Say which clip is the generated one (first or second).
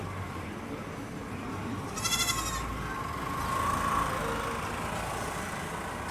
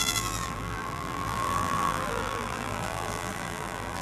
second